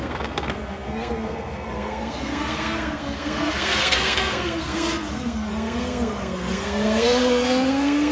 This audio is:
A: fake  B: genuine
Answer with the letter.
A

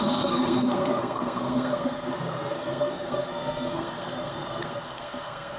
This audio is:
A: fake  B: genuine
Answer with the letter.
A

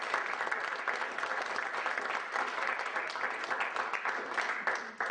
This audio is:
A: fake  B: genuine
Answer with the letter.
B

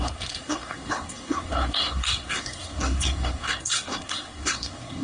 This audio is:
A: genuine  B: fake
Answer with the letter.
B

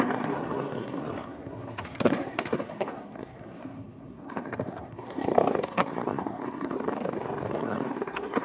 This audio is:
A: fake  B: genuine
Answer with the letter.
A